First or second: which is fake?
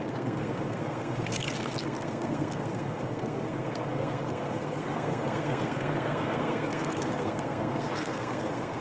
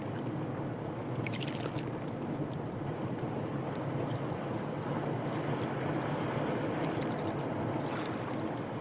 first